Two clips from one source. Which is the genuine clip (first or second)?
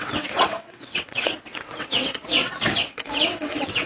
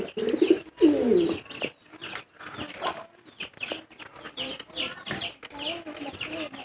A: second